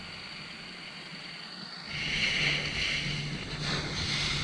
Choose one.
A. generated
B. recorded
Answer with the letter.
B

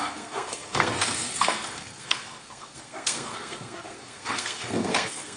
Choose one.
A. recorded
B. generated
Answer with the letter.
B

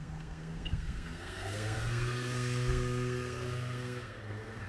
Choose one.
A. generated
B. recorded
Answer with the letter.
A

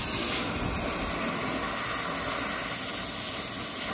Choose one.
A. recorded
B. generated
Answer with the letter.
A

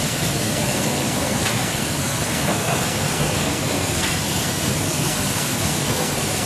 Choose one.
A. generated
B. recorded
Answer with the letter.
A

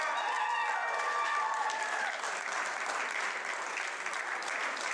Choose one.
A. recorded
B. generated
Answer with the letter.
A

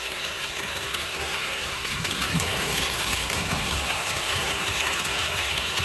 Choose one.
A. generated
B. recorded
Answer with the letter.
A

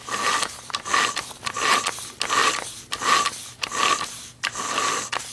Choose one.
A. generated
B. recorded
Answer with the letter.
B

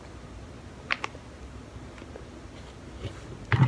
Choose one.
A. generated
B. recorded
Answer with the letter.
B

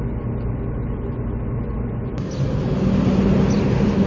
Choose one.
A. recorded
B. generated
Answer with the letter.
A